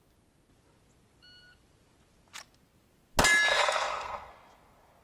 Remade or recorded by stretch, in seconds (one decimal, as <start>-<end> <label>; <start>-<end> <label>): 0.0-3.5 recorded; 3.5-4.3 remade; 4.3-5.0 recorded